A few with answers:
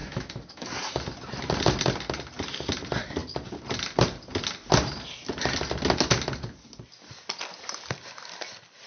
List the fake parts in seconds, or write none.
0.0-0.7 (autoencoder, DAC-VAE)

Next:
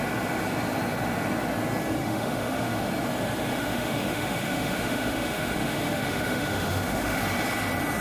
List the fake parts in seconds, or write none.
2.0-2.9 (autoencoder, DAC-VAE); 3.5-7.2

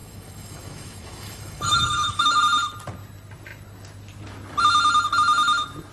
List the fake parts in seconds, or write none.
0.0-2.4 (autoencoder, DAC-VAE)

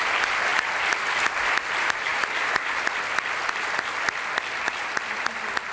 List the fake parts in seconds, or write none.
none

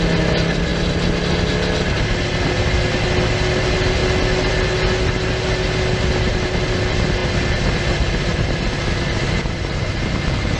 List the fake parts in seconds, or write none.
none